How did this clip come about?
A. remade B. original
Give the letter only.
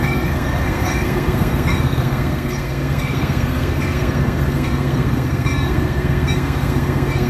A